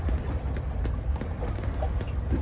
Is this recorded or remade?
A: recorded